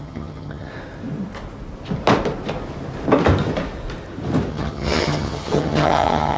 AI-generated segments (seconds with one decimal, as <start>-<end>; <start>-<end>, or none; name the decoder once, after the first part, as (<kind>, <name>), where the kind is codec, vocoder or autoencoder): 0.0-0.7 (vocoder, HiFi-GAN); 4.5-6.4